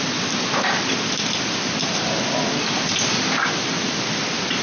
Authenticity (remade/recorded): recorded